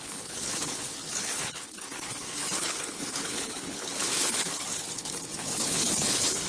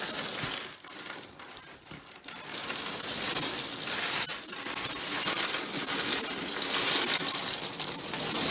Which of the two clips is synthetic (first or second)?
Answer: first